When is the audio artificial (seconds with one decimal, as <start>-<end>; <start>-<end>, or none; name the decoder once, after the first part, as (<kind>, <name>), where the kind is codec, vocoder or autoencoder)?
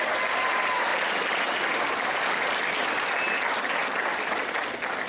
none